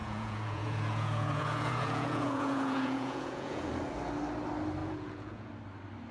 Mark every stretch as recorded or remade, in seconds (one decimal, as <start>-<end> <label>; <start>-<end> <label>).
0.0-3.7 remade; 3.7-4.8 recorded; 4.8-5.5 remade; 5.5-6.1 recorded